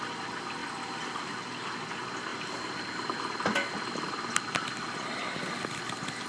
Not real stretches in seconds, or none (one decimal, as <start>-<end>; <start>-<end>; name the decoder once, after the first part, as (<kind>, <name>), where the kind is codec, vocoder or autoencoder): none